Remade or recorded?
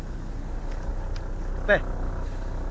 recorded